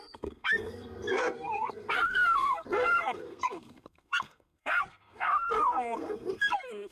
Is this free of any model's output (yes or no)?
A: no